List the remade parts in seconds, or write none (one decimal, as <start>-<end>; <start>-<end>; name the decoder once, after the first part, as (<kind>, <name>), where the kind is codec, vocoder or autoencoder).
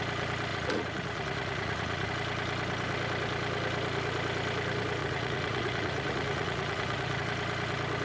0.5-2.1 (vocoder, Vocos); 5.0-7.2